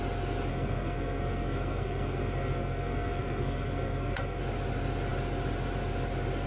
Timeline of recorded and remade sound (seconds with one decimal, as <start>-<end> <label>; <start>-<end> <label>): 0.0-0.5 recorded; 0.5-4.4 remade; 4.4-6.5 recorded